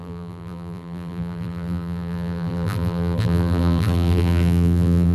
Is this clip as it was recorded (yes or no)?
no